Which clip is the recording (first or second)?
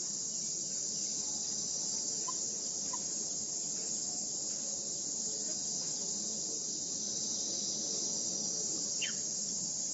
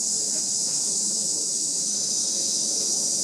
first